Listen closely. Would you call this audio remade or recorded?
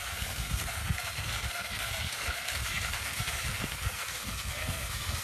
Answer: remade